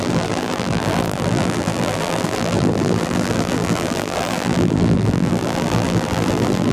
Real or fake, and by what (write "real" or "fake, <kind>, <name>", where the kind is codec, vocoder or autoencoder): fake, vocoder, BigVGAN v2